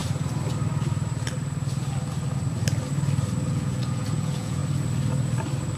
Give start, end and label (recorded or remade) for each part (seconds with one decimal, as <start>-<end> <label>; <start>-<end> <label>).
0.0-3.5 recorded; 3.5-4.6 remade; 4.6-5.8 recorded